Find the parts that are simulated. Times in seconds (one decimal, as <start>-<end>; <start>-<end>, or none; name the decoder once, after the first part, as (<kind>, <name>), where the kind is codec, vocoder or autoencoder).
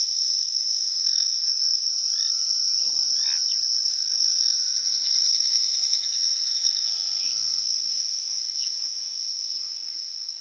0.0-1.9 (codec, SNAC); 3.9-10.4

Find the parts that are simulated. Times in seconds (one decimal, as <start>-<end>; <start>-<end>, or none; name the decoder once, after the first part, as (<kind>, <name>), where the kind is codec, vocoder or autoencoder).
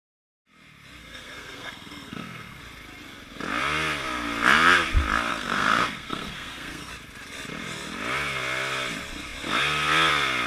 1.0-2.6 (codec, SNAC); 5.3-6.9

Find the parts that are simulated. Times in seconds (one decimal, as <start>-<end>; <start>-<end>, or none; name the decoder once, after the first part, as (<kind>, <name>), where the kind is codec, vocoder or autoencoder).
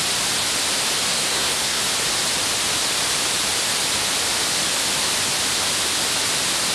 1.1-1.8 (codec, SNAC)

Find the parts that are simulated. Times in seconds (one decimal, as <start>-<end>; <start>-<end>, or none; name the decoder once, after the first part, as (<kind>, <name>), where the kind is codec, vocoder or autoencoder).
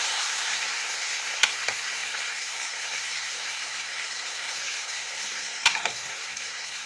0.0-6.9 (codec, SNAC)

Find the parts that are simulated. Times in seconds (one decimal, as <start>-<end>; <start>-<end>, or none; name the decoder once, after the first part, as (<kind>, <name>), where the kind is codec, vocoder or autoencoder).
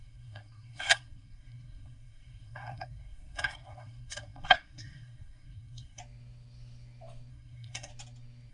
0.0-6.0 (codec, SNAC); 7.3-7.9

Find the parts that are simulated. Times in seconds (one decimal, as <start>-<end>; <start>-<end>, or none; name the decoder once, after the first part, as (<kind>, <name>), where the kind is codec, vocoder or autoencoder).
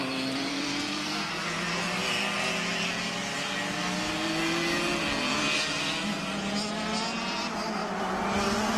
0.5-1.3 (codec, SNAC)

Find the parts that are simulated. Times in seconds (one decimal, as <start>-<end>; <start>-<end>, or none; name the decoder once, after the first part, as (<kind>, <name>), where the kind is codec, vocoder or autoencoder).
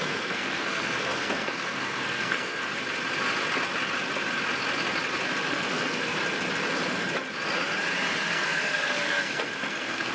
0.0-2.7 (codec, SNAC); 5.5-6.2; 8.3-10.1